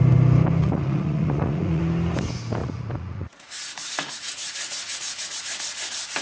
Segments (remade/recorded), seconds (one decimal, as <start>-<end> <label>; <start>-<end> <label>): 0.0-0.6 recorded; 0.6-1.8 remade; 1.8-2.6 recorded; 2.6-5.4 remade; 5.4-6.2 recorded